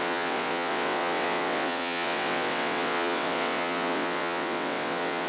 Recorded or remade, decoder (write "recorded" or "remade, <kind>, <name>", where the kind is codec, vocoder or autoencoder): remade, vocoder, WaveNeXt